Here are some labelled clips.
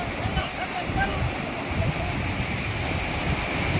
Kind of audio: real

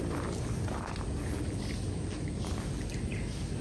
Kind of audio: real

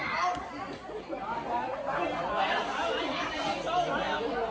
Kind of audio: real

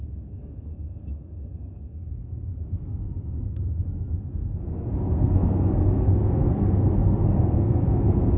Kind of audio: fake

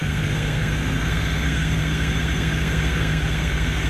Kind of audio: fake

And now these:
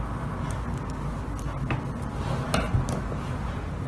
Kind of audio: real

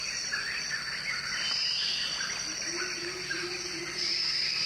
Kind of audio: fake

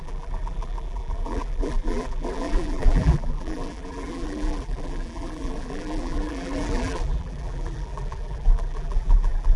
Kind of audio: fake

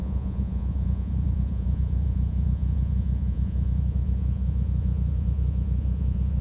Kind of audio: fake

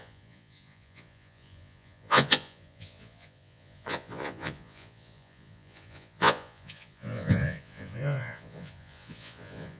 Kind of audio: fake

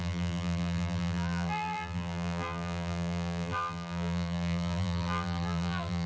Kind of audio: fake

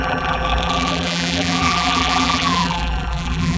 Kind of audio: fake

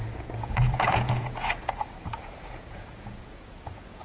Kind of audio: fake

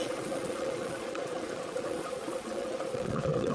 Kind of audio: fake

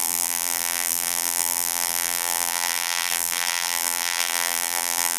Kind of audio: fake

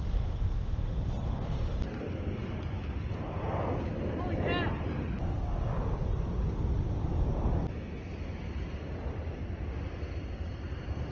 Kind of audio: real